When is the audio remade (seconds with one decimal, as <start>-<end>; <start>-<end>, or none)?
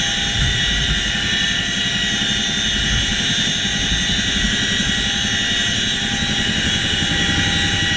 none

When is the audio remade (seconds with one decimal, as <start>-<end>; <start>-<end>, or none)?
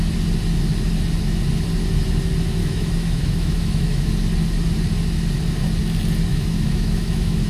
2.6-4.1; 6.3-7.5